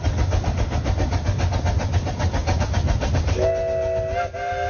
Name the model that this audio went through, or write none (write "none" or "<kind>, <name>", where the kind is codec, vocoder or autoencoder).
none